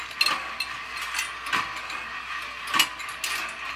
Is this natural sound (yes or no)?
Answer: yes